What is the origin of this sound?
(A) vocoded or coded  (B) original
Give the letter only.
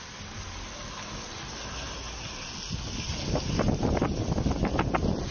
B